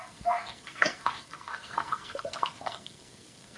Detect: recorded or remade remade